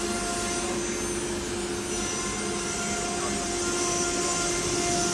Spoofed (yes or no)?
no